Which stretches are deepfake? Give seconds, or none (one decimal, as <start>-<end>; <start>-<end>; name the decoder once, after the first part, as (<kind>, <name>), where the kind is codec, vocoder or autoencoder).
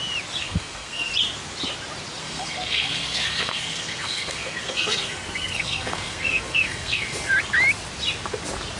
0.4-1.1 (codec, SNAC); 2.2-7.3